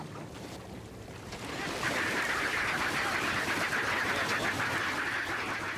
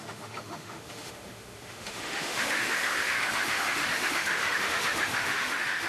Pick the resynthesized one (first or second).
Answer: second